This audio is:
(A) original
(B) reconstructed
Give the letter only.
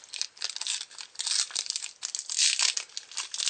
A